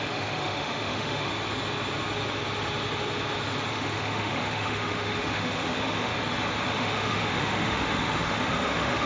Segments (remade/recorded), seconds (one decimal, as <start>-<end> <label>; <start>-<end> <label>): 0.0-1.3 remade; 1.3-3.7 recorded; 3.7-6.1 remade; 6.1-6.7 recorded; 6.7-9.1 remade